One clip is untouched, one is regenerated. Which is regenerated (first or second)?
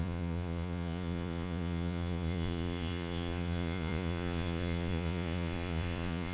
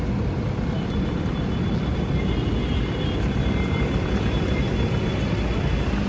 first